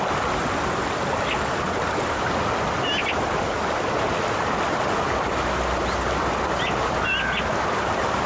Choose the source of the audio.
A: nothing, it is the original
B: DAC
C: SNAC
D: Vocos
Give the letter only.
A